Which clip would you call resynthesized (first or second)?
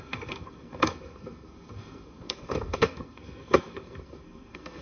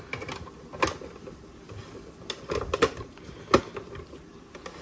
first